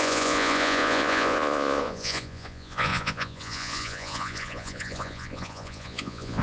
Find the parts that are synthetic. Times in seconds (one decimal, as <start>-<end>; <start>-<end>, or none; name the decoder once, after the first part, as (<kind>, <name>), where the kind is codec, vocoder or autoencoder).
0.0-6.4 (vocoder, Vocos)